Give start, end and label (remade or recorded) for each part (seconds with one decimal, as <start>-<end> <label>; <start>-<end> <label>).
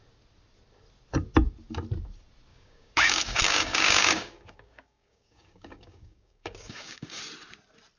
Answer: 0.0-2.5 recorded; 2.5-7.2 remade; 7.2-8.0 recorded